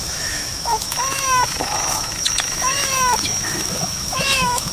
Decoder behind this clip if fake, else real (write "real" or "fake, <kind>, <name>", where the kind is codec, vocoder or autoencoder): fake, autoencoder, DAC-VAE